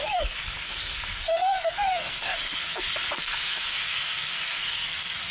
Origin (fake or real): fake